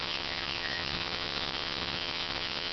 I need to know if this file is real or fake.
fake